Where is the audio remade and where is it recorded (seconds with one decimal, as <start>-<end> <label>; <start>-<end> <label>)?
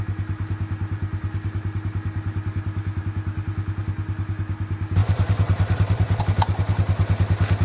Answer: 0.0-5.0 recorded; 5.0-6.2 remade; 6.2-7.6 recorded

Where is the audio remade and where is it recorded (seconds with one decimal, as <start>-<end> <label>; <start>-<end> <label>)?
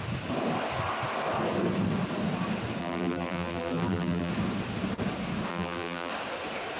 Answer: 0.0-2.8 recorded; 2.8-4.3 remade; 4.3-5.5 recorded; 5.5-6.1 remade; 6.1-6.8 recorded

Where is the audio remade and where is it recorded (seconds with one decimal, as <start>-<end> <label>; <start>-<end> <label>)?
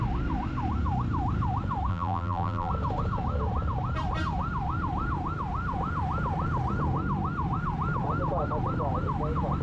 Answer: 0.0-1.9 recorded; 1.9-2.7 remade; 2.7-9.6 recorded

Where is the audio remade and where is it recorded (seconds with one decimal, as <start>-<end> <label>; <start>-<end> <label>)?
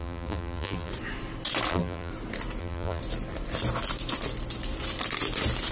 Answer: 0.0-0.9 remade; 0.9-1.7 recorded; 1.7-2.1 remade; 2.1-2.6 recorded; 2.6-3.0 remade; 3.0-5.7 recorded